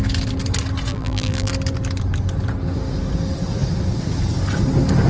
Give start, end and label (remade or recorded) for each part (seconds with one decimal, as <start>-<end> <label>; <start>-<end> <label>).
0.0-0.9 recorded; 0.9-1.5 remade; 1.5-5.1 recorded